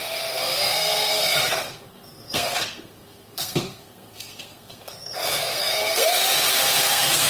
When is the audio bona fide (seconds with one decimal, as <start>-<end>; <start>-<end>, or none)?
6.2-6.8